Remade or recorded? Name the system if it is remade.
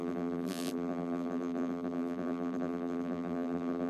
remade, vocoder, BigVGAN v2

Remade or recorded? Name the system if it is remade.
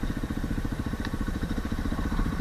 remade, vocoder, BigVGAN v2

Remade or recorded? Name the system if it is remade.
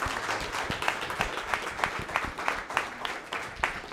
recorded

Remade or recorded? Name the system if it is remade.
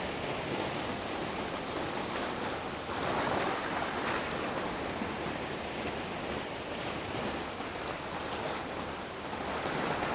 recorded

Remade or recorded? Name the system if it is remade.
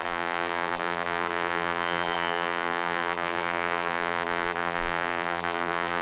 remade, vocoder, BigVGAN v2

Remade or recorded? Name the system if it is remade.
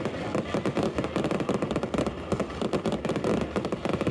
recorded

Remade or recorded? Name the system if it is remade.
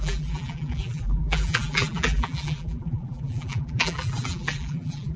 remade, vocoder, BigVGAN v2